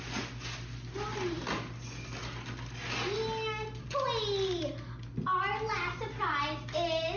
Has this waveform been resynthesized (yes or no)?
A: no